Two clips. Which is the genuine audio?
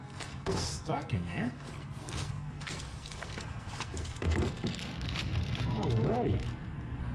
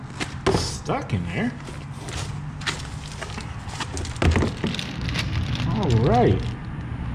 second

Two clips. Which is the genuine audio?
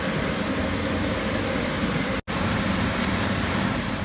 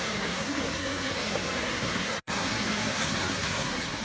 first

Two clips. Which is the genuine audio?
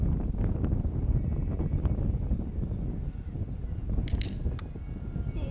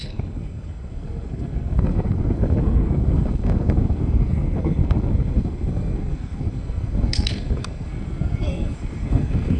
first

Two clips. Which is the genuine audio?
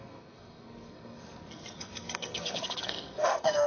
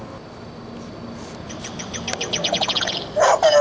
second